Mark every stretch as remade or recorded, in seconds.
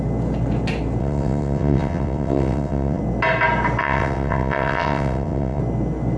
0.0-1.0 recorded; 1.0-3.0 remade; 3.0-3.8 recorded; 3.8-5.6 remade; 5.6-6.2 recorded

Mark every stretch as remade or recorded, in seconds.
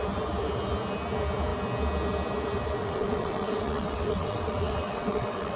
0.0-2.8 recorded; 2.8-5.6 remade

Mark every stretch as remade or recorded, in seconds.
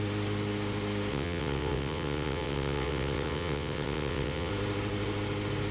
0.0-1.1 recorded; 1.1-4.5 remade; 4.5-5.7 recorded